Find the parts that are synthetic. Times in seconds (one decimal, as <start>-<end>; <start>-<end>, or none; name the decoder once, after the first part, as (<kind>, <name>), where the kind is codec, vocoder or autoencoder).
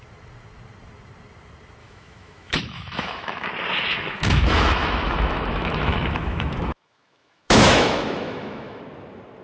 1.8-3.5 (autoencoder, DAC-VAE); 3.9-8.8